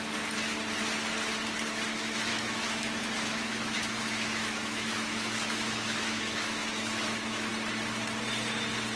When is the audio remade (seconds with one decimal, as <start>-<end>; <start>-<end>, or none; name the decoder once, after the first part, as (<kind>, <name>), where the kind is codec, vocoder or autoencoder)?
2.3-7.5 (autoencoder, DAC-VAE)